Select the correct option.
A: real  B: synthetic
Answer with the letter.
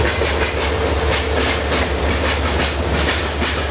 A